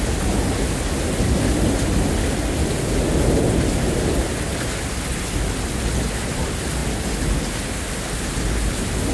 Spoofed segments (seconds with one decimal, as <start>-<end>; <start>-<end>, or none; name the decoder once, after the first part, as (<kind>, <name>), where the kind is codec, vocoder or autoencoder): none

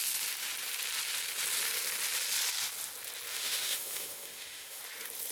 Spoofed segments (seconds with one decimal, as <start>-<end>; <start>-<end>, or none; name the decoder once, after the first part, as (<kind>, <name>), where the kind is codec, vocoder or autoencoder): 3.3-4.8 (autoencoder, DAC-VAE)

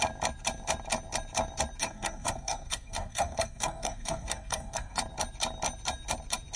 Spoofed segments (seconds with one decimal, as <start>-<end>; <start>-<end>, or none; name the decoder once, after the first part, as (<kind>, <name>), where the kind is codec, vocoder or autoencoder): 1.8-5.0 (codec, SNAC)

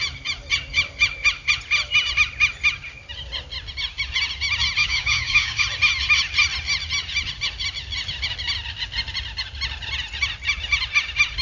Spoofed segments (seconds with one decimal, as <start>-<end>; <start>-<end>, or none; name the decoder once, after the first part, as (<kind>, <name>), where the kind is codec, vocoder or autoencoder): 4.8-5.6 (codec, DAC)

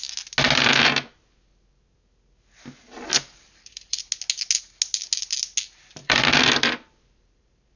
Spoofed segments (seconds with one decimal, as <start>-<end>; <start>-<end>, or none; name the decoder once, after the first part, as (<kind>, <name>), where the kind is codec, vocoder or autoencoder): 3.1-4.1 (vocoder, BigVGAN v2); 6.0-7.8

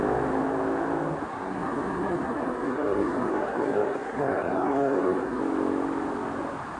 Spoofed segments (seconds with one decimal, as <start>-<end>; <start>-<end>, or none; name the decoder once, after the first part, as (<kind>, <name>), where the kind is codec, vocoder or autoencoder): 1.3-5.4 (codec, SNAC)